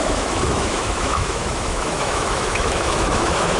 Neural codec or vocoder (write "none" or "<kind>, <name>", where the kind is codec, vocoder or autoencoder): autoencoder, DAC-VAE